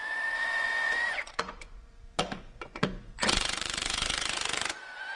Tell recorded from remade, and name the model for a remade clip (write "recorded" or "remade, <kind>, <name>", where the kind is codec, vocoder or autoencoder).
remade, vocoder, Vocos